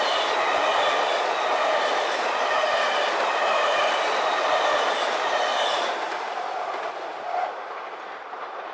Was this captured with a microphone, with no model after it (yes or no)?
yes